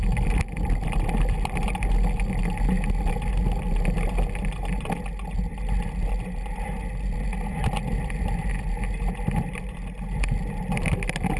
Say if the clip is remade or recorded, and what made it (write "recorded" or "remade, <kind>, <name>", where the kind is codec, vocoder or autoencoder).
recorded